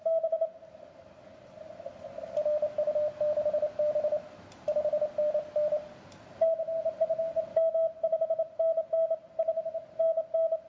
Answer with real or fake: real